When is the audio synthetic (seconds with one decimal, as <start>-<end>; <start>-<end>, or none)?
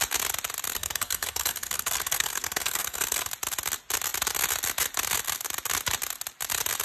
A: 0.7-3.3